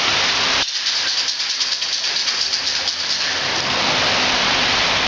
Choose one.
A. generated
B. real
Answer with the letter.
B